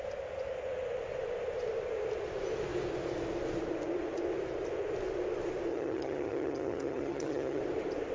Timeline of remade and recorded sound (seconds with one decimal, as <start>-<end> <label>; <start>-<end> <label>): 0.0-5.7 recorded; 5.7-7.6 remade; 7.6-8.1 recorded